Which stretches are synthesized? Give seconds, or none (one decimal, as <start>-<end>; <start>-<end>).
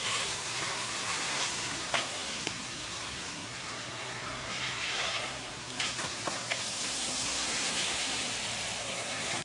0.0-8.3; 8.8-9.4